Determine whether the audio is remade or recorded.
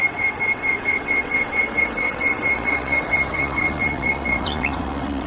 remade